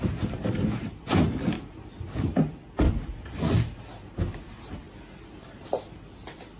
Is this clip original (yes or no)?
yes